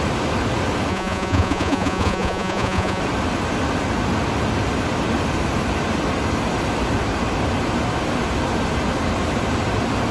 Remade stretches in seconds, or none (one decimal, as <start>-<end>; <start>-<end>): 0.9-3.0